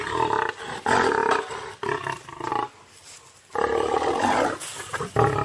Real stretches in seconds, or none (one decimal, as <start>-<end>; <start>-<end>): 0.0-5.4